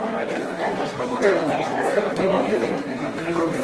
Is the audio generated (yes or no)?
yes